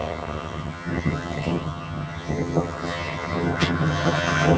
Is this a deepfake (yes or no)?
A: yes